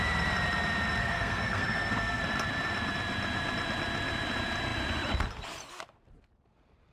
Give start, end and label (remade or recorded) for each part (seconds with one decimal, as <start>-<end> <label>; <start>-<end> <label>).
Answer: 0.0-1.0 recorded; 1.0-2.2 remade; 2.2-6.9 recorded